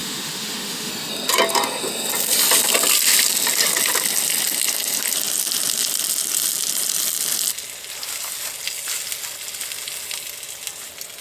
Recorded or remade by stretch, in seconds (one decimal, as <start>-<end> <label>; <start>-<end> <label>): 0.0-0.9 remade; 0.9-11.2 recorded